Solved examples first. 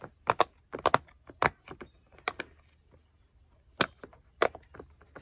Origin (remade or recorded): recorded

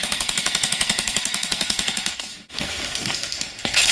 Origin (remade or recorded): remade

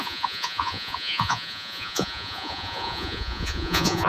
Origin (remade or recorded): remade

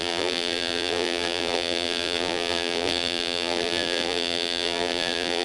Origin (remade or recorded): remade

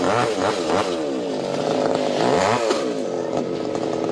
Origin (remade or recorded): recorded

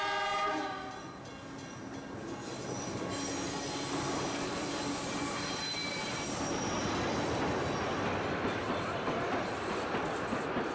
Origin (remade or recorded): recorded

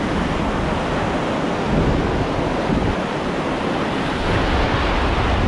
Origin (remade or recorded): recorded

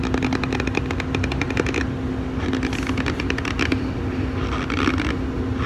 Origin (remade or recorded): recorded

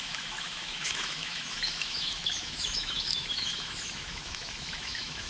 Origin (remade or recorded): remade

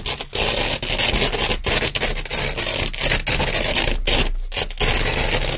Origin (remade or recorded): recorded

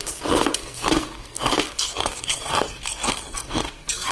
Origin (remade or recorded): remade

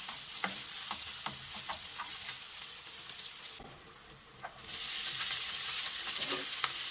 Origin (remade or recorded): remade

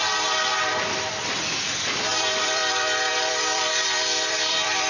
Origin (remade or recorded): remade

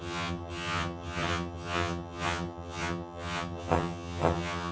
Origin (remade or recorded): remade